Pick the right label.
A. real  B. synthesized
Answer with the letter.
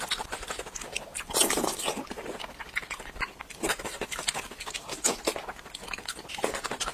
A